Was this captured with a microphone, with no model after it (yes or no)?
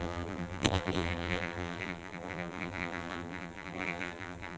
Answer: no